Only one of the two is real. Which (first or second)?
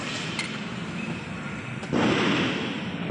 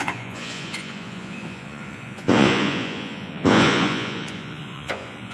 first